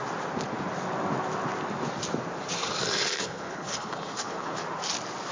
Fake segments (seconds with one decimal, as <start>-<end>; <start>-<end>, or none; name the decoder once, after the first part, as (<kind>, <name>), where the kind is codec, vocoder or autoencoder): 3.2-4.6 (codec, HILCodec)